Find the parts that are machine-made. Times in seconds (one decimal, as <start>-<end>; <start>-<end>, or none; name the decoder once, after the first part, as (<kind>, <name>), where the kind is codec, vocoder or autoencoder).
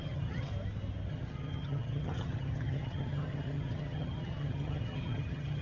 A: 0.0-0.5 (vocoder, HiFi-GAN); 1.1-5.6